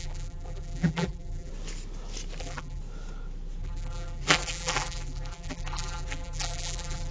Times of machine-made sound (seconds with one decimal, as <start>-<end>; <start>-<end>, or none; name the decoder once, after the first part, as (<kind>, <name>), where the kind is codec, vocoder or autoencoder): 0.0-1.5 (vocoder, BigVGAN v2); 2.4-2.8; 3.6-7.1